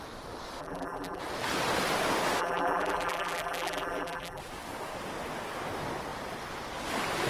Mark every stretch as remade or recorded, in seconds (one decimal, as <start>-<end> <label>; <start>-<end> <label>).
0.0-0.6 recorded; 0.6-1.2 remade; 1.2-2.4 recorded; 2.4-4.4 remade; 4.4-7.3 recorded